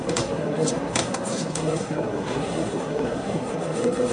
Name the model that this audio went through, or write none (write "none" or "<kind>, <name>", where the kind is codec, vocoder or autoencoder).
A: codec, SNAC